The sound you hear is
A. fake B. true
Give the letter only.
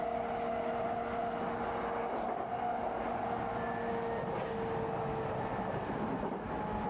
B